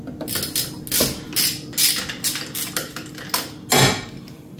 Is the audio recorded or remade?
recorded